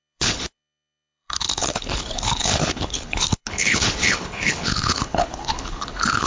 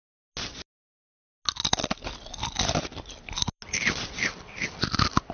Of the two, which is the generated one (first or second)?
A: first